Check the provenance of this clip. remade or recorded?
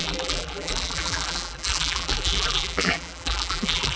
remade